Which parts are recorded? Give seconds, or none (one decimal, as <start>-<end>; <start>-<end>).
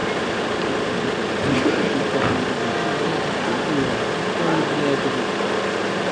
0.0-6.1